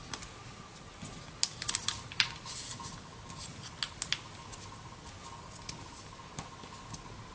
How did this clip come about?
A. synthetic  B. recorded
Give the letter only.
B